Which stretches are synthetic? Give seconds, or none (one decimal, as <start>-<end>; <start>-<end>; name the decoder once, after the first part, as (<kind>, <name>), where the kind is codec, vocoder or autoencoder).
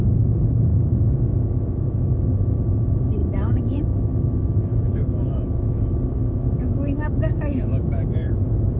0.7-2.1 (autoencoder, DAC-VAE); 3.2-8.3